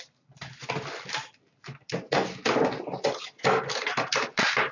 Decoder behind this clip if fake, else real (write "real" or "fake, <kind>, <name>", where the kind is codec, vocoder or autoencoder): real